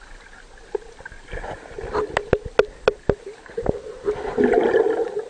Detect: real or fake real